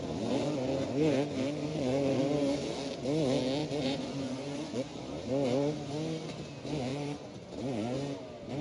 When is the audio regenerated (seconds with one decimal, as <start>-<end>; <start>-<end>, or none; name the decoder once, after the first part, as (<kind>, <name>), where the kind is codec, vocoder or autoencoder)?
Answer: 1.7-2.2 (vocoder, Vocos); 3.6-5.0; 6.9-7.5